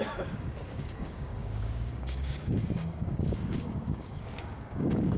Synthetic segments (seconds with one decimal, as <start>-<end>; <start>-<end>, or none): 0.0-5.2